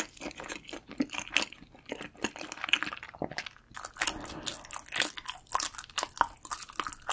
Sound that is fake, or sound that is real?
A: real